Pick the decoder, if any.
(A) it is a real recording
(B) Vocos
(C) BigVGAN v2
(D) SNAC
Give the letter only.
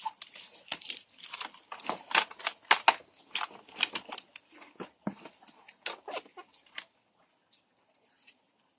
A